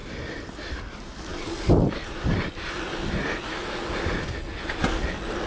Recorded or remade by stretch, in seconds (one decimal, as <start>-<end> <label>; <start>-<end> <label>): 0.0-0.8 remade; 0.8-1.3 recorded; 1.3-3.2 remade; 3.2-5.5 recorded